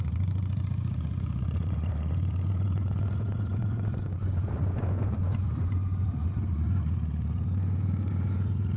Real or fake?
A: fake